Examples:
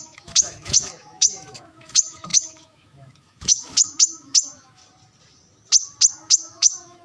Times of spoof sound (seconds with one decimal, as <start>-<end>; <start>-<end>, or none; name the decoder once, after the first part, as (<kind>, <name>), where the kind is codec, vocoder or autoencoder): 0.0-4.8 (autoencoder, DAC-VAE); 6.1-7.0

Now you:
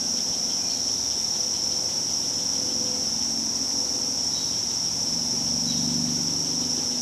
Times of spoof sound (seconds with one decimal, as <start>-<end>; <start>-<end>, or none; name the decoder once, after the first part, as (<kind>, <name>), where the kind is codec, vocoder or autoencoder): none

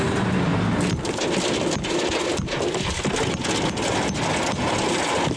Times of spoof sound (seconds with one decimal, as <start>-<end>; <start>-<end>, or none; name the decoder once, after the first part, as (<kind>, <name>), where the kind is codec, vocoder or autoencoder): none